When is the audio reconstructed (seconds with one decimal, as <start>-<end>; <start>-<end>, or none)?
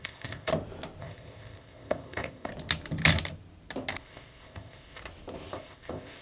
0.0-0.5; 1.0-2.5; 4.0-5.0; 5.5-6.2